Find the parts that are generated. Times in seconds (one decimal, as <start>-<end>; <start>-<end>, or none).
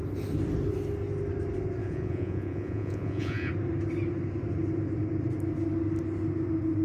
1.8-3.5